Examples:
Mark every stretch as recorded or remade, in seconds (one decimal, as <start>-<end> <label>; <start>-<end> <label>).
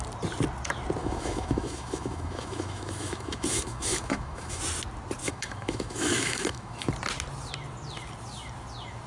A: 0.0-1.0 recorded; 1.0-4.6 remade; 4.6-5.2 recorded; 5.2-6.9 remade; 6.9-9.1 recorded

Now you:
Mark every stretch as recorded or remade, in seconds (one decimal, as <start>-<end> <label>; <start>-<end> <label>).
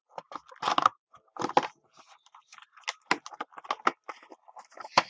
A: 0.0-5.1 recorded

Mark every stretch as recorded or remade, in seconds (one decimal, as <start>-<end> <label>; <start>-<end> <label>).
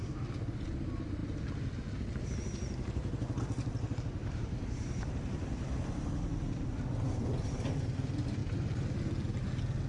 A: 0.0-4.2 recorded; 4.2-4.9 remade; 4.9-8.4 recorded; 8.4-9.0 remade; 9.0-9.9 recorded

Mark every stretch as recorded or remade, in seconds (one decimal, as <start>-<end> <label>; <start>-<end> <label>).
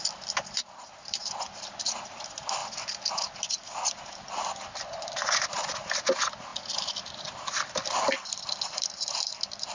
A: 0.0-9.7 recorded